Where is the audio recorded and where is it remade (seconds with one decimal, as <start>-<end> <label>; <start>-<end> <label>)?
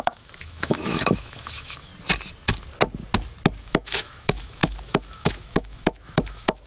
0.0-1.9 remade; 1.9-3.6 recorded; 3.6-6.7 remade